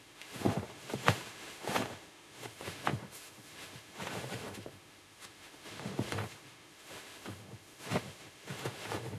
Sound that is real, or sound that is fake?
fake